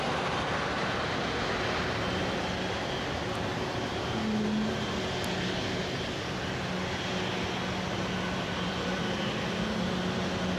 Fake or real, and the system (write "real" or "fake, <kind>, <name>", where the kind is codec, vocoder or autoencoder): real